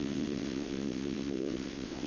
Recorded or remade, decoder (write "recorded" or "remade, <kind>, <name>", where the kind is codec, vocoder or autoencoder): remade, vocoder, WaveNeXt